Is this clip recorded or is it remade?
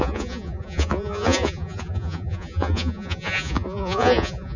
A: remade